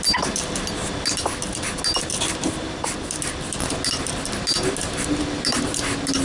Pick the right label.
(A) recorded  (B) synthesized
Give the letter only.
A